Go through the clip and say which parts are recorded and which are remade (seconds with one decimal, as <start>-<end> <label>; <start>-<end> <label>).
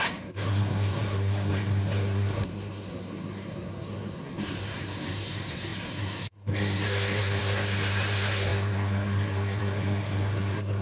0.0-10.8 remade